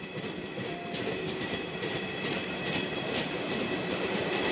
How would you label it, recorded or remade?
recorded